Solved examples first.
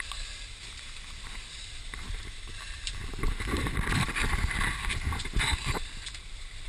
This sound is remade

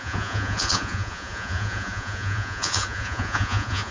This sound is remade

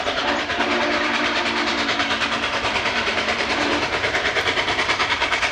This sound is remade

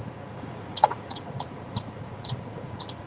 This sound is remade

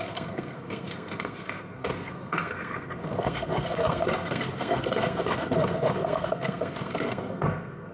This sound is remade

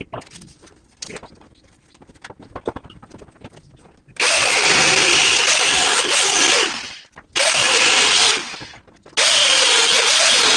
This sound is recorded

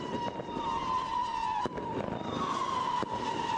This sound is recorded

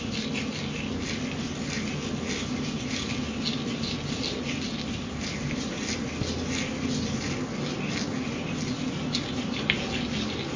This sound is recorded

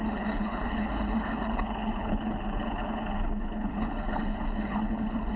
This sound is remade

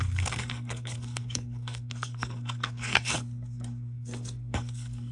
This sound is remade